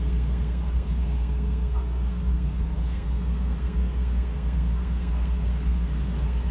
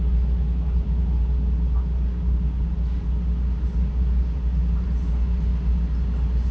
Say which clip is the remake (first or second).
first